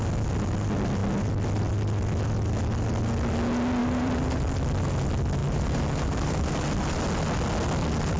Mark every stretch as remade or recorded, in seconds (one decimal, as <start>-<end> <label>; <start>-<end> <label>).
0.0-3.8 recorded; 3.8-4.4 remade; 4.4-5.4 recorded; 5.4-6.5 remade; 6.5-8.2 recorded